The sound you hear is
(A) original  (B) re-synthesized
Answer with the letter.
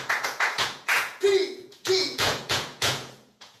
B